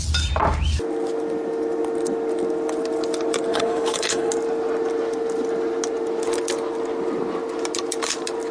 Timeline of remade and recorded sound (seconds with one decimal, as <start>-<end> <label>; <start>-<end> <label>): 0.0-3.5 recorded; 3.5-4.3 remade; 4.3-8.5 recorded

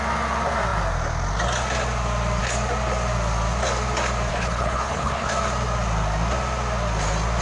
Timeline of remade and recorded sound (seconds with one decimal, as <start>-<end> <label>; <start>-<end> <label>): 0.0-4.3 recorded; 4.3-5.3 remade; 5.3-7.4 recorded

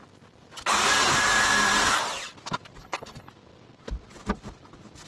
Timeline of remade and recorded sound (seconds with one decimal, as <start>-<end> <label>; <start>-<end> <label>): 0.0-2.8 recorded; 2.8-3.3 remade; 3.3-5.1 recorded

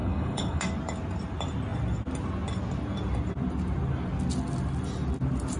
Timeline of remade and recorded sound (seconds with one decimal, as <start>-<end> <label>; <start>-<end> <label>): 0.0-0.6 remade; 0.6-5.6 recorded

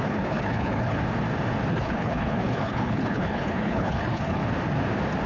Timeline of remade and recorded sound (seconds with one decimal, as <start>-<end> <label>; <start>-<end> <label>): 0.0-1.0 remade; 1.0-1.7 recorded; 1.7-4.4 remade; 4.4-5.3 recorded

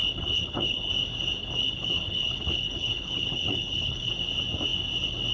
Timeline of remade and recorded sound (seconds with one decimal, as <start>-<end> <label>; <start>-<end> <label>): 0.0-0.9 remade; 0.9-1.4 recorded; 1.4-4.1 remade; 4.1-5.3 recorded

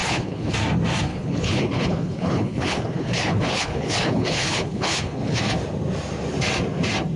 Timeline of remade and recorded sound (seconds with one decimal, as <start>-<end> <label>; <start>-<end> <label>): 0.0-0.5 remade; 0.5-1.1 recorded; 1.1-5.4 remade; 5.4-7.2 recorded